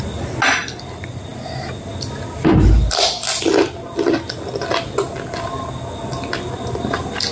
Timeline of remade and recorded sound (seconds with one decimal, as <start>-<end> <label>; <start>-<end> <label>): 0.0-7.3 recorded

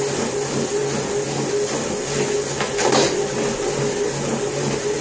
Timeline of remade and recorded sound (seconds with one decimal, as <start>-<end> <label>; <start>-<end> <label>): 0.0-5.0 recorded

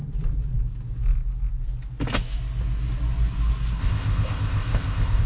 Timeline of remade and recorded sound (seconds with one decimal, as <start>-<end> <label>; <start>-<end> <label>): 0.0-3.8 recorded; 3.8-5.3 remade

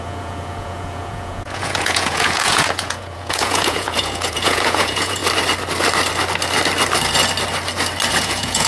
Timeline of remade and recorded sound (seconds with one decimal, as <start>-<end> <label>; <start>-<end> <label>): 0.0-5.2 remade; 5.2-8.1 recorded; 8.1-8.7 remade

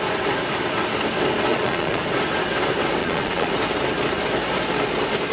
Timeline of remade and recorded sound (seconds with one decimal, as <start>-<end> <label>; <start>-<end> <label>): 0.0-1.5 recorded; 1.5-2.0 remade; 2.0-3.0 recorded; 3.0-3.5 remade; 3.5-5.3 recorded

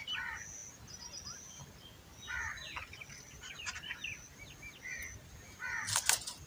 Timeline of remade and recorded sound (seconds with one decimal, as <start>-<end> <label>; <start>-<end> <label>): 0.0-6.5 recorded

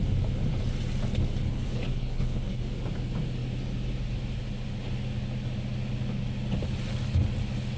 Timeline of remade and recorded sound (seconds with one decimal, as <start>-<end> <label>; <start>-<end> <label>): 0.0-1.4 recorded; 1.4-2.6 remade; 2.6-7.8 recorded

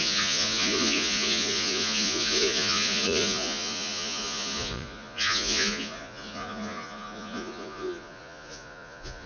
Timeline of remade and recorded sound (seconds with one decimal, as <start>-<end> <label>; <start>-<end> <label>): 0.0-9.3 remade